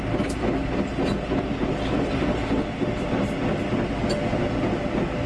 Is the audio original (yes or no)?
yes